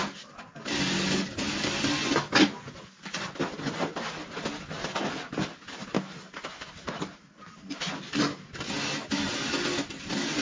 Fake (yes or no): no